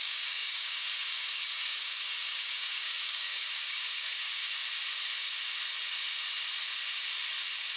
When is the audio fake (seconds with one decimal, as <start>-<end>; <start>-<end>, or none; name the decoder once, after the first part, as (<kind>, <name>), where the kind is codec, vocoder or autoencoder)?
0.0-4.4 (codec, DAC)